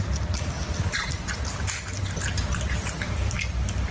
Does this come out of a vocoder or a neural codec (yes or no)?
no